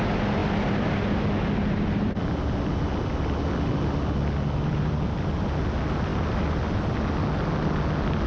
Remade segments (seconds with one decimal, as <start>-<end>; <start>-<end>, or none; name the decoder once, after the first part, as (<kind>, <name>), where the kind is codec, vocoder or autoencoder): none